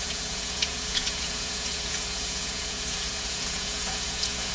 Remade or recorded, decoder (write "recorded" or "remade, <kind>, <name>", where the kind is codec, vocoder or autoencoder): remade, vocoder, Vocos